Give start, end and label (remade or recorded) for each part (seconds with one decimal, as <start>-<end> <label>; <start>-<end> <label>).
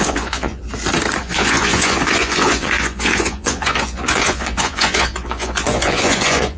0.0-0.6 remade; 0.6-1.2 recorded; 1.2-6.6 remade